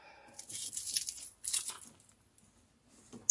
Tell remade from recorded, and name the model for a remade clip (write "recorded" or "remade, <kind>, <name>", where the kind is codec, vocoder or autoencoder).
recorded